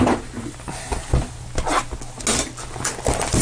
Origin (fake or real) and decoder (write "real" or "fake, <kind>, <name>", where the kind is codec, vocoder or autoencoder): real